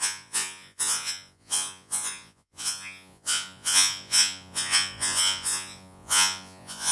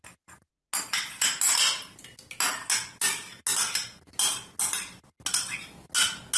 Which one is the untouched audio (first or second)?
second